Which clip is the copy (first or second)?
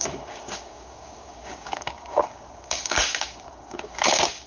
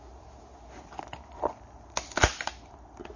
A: first